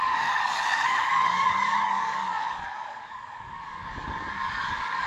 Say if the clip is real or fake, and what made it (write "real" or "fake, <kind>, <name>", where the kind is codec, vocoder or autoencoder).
fake, codec, DAC